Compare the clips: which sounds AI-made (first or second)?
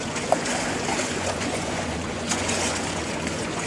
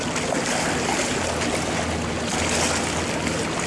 first